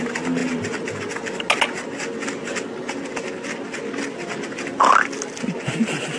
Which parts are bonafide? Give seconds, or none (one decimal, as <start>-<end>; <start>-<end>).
0.0-6.2

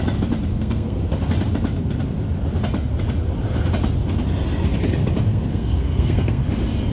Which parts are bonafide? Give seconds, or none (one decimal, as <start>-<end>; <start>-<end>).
0.0-0.5; 1.0-5.3; 6.4-6.9

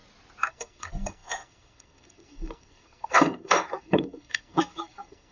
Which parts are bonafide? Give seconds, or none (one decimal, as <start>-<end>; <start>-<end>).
0.0-0.5

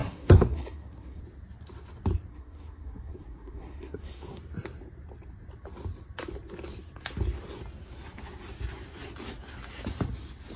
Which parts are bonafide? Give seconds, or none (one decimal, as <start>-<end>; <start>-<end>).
1.2-2.3; 4.4-10.6

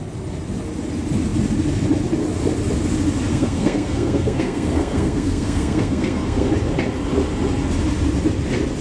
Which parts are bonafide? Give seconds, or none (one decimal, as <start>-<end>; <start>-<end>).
0.0-3.3; 6.5-8.8

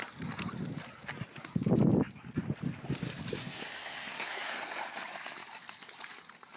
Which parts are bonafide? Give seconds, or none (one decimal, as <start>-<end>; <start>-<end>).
0.0-3.4; 4.6-6.6

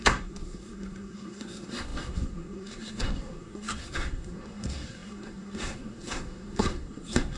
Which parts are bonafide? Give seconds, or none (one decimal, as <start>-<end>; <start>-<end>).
none